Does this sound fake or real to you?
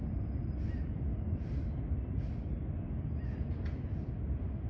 real